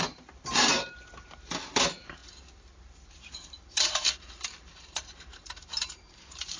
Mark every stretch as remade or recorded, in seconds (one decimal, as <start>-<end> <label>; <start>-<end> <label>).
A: 0.0-2.2 remade; 2.2-3.3 recorded; 3.3-6.6 remade